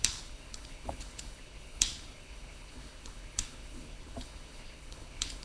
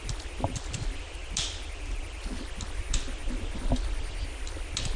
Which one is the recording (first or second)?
second